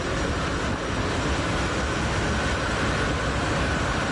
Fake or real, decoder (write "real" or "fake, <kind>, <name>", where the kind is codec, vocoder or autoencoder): real